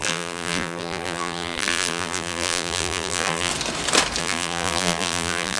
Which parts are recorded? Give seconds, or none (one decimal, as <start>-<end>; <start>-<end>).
3.5-4.2